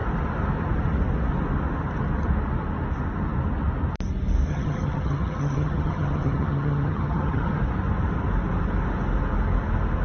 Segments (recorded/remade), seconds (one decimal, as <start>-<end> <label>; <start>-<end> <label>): 0.0-4.5 recorded; 4.5-7.6 remade; 7.6-10.0 recorded